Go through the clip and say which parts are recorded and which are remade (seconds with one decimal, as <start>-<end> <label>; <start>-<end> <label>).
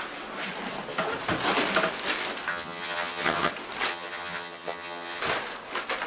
0.0-2.5 recorded; 2.5-3.5 remade; 3.5-3.9 recorded; 3.9-5.2 remade; 5.2-6.1 recorded